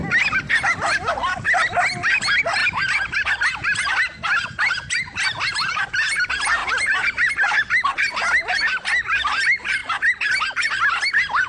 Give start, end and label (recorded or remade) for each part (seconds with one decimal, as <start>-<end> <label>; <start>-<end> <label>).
0.0-6.6 recorded; 6.6-7.3 remade; 7.3-11.5 recorded